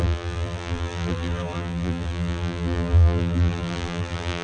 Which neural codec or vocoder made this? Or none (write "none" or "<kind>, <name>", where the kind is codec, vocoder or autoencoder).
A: vocoder, BigVGAN v2